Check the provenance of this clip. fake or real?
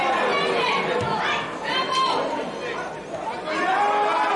real